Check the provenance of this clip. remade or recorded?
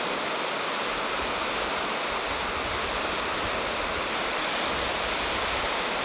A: recorded